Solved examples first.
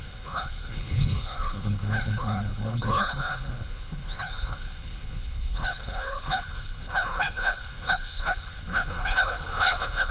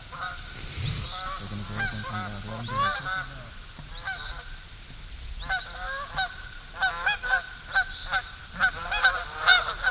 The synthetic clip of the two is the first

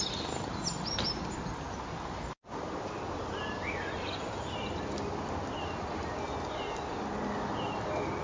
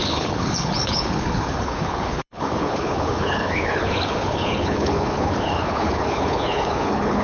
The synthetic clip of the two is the second